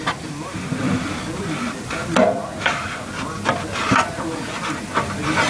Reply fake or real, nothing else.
real